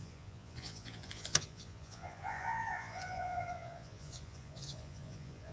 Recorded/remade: remade